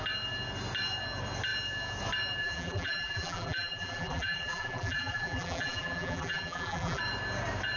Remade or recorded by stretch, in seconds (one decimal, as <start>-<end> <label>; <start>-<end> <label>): 0.0-2.4 recorded; 2.4-7.0 remade; 7.0-7.8 recorded